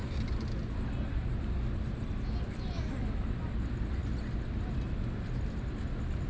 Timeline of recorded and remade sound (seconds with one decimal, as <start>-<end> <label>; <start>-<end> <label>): 0.0-6.3 recorded